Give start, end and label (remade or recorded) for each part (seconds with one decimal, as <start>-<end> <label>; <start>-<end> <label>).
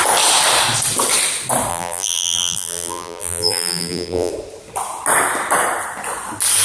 0.0-1.7 recorded; 1.7-4.3 remade; 4.3-6.6 recorded